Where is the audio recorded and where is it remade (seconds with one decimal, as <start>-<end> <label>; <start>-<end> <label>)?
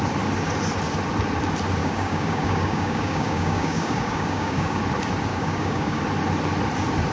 0.0-1.8 recorded; 1.8-4.8 remade; 4.8-5.3 recorded; 5.3-6.0 remade; 6.0-7.1 recorded